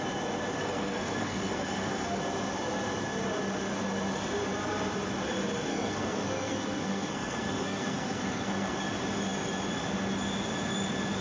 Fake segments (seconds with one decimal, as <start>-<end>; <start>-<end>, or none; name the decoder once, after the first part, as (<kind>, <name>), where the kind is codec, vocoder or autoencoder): 0.6-2.2 (codec, SNAC); 5.7-8.8